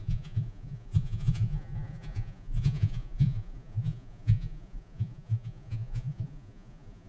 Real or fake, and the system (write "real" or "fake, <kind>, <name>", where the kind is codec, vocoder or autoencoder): fake, vocoder, Vocos